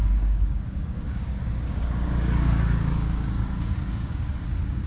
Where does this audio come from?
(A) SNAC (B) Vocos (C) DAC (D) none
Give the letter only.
C